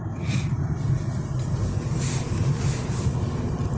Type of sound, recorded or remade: recorded